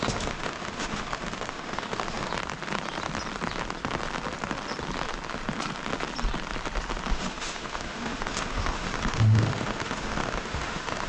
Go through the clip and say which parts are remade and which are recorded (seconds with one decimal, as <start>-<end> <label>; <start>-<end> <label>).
0.0-2.3 remade; 2.3-7.1 recorded; 7.1-11.1 remade